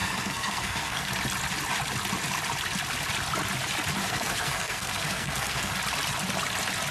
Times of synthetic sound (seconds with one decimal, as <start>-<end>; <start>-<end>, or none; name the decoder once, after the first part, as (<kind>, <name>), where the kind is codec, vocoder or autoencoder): 0.0-1.1 (codec, SNAC); 4.0-5.7